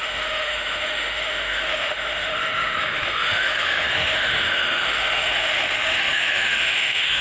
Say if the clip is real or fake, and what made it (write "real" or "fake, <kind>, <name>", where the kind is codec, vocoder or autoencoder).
fake, autoencoder, DAC-VAE